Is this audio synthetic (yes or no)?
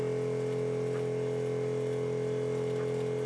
no